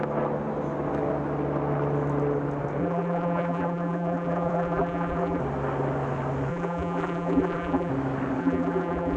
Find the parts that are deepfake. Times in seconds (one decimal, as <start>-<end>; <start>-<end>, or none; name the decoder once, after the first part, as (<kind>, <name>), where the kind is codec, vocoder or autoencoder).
2.8-5.4 (vocoder, BigVGAN v2); 6.5-7.9; 8.4-9.2